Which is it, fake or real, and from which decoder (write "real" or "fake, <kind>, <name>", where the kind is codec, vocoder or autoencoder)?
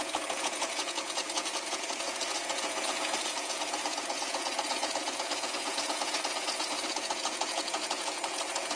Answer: fake, vocoder, Vocos